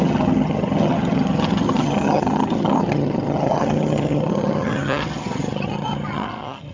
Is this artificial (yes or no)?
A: yes